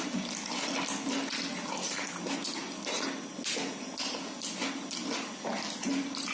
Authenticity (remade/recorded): recorded